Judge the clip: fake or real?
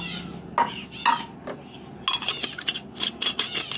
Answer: real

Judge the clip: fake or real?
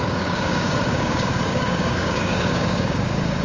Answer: fake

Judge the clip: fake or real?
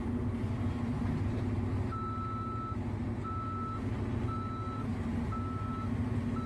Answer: real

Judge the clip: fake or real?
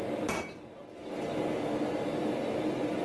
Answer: real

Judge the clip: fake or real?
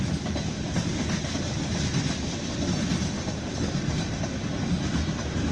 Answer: real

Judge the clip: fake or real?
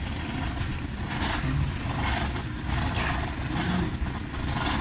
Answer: real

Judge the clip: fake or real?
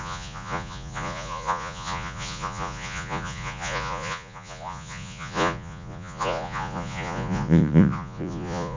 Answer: fake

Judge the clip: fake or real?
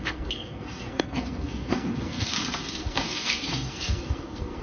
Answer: fake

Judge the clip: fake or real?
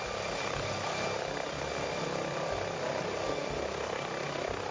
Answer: real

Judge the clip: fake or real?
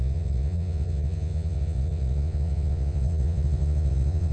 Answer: fake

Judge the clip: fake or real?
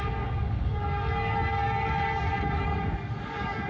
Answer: fake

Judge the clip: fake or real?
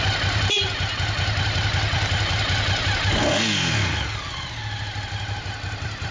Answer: real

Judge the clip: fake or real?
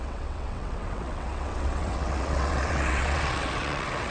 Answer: fake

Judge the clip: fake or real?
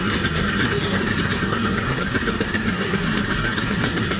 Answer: fake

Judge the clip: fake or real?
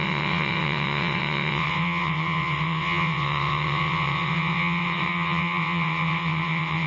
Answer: fake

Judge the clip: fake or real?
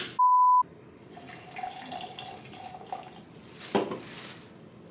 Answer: real